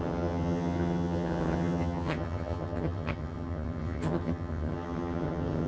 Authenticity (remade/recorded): remade